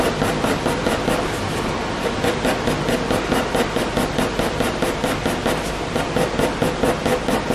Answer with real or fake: real